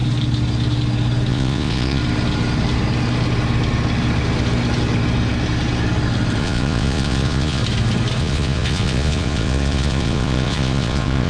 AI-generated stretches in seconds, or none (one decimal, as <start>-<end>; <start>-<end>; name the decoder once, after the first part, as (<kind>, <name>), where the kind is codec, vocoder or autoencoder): 1.3-2.0 (vocoder, Vocos); 6.4-7.6; 8.2-11.3